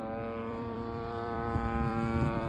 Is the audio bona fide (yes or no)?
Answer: no